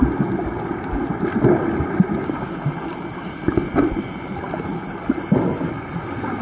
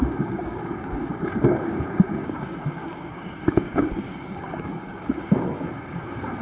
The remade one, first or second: second